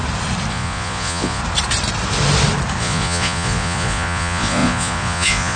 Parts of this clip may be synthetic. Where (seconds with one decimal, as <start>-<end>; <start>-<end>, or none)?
0.5-1.4; 2.8-5.6